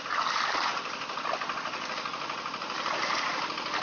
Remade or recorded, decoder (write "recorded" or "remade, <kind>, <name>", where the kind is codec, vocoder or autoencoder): recorded